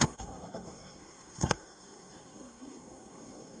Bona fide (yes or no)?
no